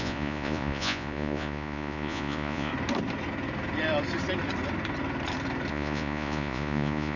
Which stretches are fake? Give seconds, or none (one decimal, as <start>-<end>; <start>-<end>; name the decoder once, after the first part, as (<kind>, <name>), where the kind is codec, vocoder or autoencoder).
0.0-2.7 (vocoder, Vocos); 5.7-7.2